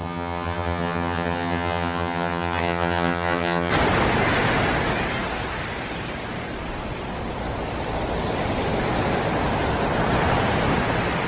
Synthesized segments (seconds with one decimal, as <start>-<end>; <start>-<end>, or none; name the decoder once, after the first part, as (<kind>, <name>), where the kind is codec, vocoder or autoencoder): 0.0-3.7 (vocoder, HiFi-GAN)